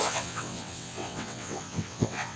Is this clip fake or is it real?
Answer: fake